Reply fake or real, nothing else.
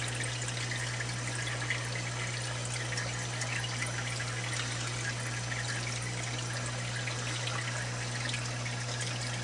real